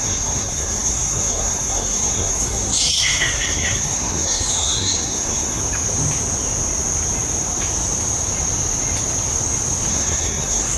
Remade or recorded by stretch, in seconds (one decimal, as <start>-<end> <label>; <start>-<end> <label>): 0.0-5.6 remade; 5.6-9.9 recorded; 9.9-10.8 remade